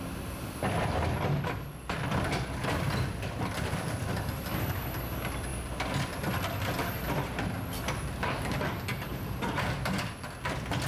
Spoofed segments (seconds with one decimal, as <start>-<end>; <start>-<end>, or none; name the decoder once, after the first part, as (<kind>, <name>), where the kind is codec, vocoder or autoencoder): none